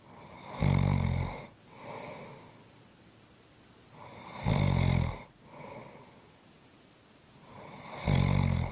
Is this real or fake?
real